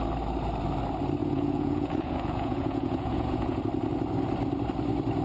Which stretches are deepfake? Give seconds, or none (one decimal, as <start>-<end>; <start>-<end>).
1.2-3.6